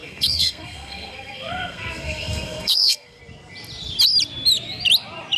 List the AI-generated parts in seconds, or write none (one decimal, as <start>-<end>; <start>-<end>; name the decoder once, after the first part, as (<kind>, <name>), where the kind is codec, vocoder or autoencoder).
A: 0.0-3.2 (codec, SNAC)